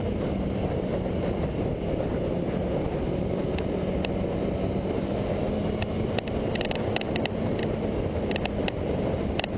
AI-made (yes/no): no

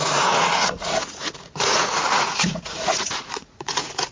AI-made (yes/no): yes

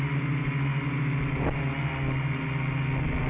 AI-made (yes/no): no